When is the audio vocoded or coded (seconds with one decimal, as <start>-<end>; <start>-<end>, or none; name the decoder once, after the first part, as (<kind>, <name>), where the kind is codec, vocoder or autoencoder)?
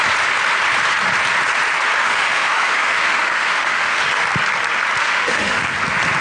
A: 2.0-4.0 (autoencoder, DAC-VAE); 5.0-5.6